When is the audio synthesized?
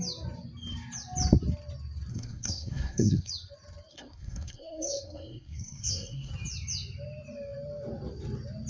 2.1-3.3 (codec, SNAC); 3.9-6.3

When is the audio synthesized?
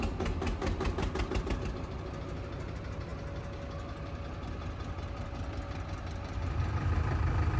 none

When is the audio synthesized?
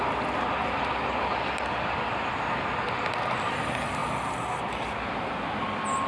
none